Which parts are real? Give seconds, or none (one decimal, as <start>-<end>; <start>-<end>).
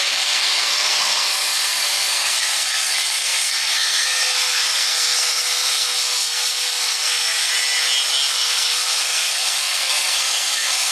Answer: 7.5-8.3